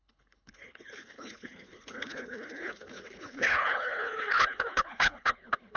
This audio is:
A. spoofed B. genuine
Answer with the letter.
A